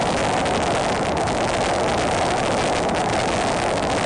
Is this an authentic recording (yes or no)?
yes